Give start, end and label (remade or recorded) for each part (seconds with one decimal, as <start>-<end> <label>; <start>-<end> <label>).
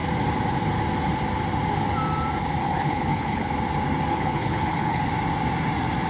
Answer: 0.0-2.6 recorded; 2.6-3.5 remade; 3.5-4.1 recorded; 4.1-5.0 remade; 5.0-6.1 recorded